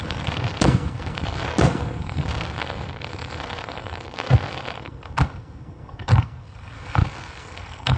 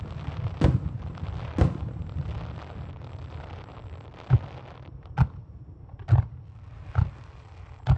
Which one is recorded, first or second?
second